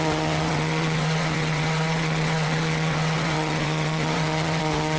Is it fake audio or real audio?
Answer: fake